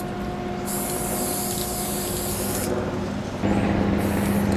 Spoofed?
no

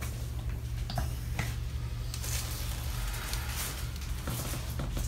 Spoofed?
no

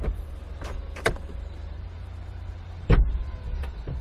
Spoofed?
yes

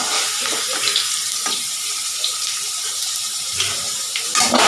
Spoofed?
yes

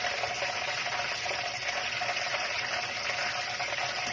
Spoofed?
no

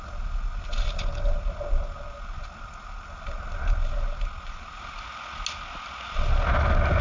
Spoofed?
no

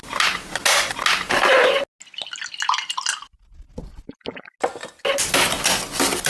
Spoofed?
no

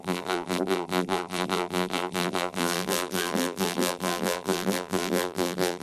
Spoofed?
yes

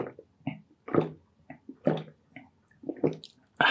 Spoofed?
no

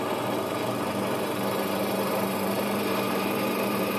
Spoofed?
yes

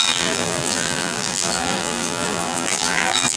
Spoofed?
yes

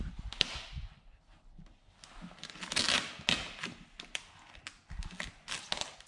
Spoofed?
no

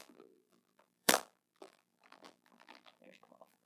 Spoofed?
yes